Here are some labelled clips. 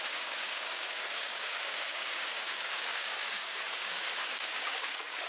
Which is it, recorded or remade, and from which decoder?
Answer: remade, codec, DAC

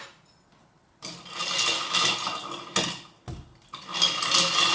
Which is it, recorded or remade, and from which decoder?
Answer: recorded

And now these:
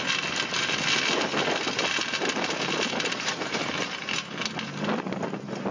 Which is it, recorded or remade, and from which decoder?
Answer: recorded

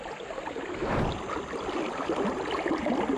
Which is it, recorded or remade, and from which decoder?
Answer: recorded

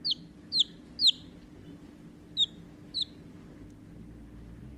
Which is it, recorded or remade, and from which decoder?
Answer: recorded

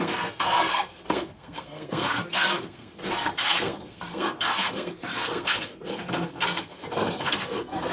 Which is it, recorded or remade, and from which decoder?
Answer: remade, codec, SNAC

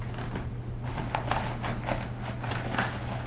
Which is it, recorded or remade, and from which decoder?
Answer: recorded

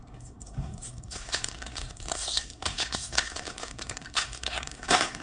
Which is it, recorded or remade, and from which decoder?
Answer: remade, codec, SNAC